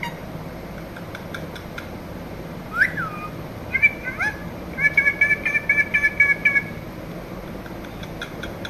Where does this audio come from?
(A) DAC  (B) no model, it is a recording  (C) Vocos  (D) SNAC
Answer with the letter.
B